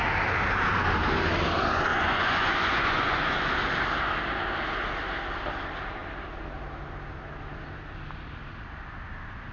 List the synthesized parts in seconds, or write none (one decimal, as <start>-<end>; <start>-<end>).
1.9-3.5